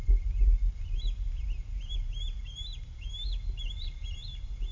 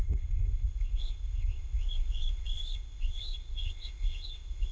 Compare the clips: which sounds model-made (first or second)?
second